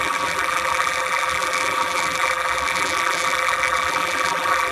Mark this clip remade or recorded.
remade